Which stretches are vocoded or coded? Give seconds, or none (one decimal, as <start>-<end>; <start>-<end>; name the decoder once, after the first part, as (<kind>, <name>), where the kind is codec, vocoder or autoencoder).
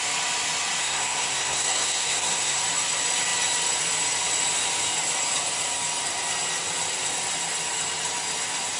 0.8-2.6 (codec, SNAC)